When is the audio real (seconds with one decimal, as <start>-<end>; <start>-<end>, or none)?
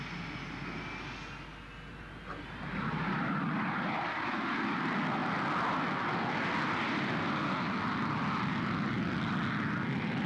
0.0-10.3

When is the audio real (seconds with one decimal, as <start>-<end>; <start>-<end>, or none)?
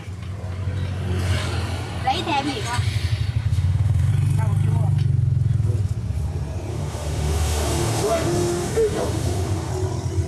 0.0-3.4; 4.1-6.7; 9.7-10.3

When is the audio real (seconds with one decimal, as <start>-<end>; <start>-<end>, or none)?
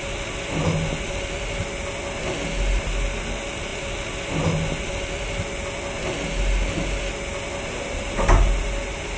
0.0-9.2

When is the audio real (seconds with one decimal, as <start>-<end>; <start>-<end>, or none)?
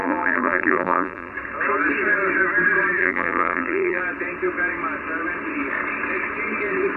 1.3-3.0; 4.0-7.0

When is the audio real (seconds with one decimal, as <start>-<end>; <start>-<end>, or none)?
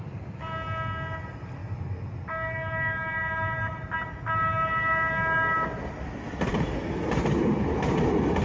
0.0-8.4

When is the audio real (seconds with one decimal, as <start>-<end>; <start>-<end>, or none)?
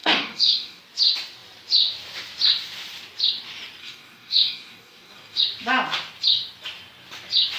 0.8-3.8; 5.4-7.6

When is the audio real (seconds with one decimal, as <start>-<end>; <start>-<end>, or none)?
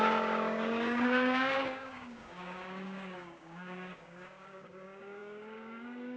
none